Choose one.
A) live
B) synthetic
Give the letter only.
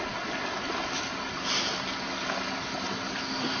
A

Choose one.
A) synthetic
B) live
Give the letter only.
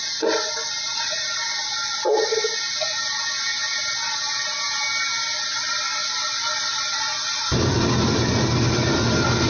B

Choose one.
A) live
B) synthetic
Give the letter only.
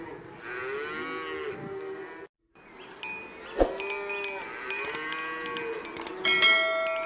A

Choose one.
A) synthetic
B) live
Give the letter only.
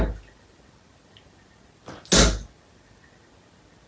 B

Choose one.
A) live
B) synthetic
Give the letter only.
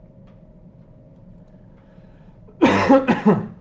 A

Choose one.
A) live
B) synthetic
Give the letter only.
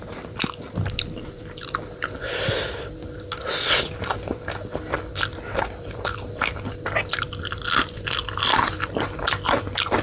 A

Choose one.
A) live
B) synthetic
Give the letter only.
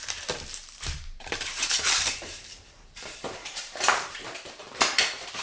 B